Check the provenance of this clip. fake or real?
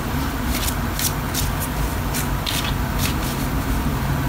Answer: real